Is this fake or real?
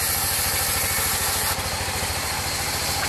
real